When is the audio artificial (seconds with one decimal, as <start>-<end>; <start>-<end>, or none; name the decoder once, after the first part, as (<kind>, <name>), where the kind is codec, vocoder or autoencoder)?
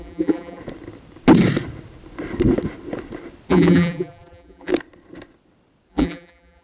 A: 0.0-0.6 (vocoder, BigVGAN v2); 3.5-4.7; 5.9-6.6